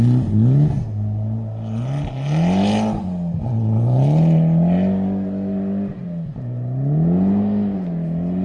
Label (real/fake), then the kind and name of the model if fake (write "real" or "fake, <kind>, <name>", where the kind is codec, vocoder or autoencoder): real